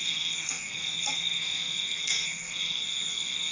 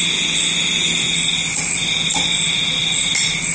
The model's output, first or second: first